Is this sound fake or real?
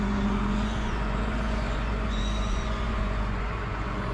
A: fake